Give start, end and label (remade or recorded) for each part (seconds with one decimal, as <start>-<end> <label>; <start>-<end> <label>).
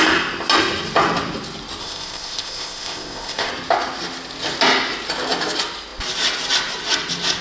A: 0.0-1.8 recorded; 1.8-3.5 remade; 3.5-7.4 recorded